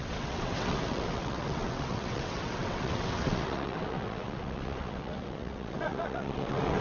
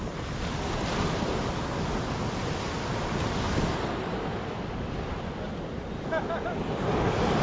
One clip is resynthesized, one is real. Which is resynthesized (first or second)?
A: first